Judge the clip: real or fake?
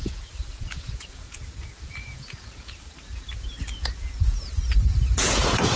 fake